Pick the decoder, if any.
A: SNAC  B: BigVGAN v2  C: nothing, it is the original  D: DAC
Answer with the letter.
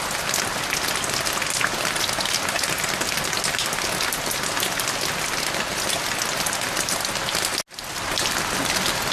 C